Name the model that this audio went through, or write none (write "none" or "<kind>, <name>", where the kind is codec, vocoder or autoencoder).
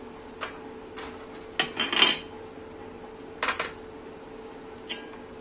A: none